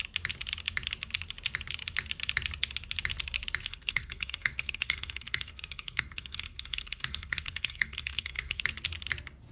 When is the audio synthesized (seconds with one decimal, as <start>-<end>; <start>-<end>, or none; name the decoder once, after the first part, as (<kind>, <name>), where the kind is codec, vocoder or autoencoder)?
3.6-8.6 (codec, SNAC)